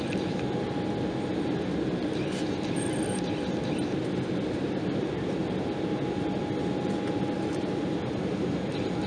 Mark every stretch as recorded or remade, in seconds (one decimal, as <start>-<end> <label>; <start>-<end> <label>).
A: 0.0-9.1 recorded